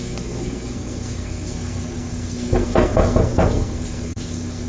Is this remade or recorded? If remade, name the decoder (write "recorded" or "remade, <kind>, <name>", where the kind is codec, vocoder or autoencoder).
remade, codec, SNAC